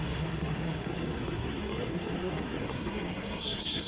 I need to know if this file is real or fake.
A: fake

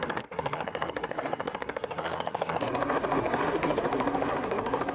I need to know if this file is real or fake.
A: fake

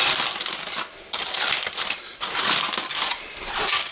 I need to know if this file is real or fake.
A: real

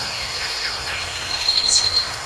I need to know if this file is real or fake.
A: fake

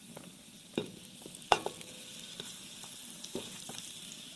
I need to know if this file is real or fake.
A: real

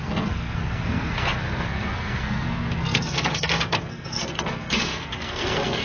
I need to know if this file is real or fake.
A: fake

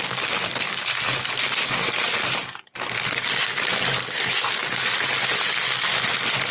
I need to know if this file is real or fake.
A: real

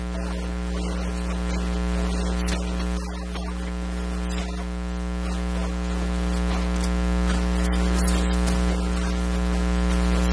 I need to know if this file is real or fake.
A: real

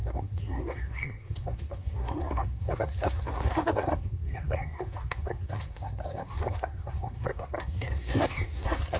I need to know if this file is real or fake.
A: fake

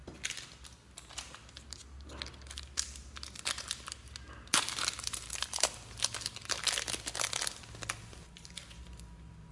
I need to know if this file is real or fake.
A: real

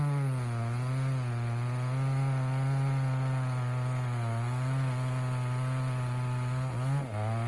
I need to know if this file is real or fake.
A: real